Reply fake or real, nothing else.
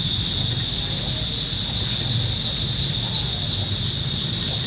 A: real